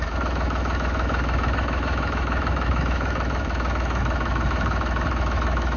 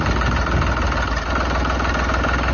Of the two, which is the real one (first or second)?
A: second